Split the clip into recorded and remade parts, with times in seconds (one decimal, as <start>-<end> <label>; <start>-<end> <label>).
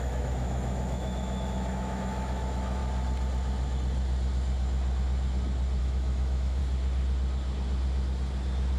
0.0-2.8 remade; 2.8-5.8 recorded; 5.8-6.6 remade; 6.6-8.8 recorded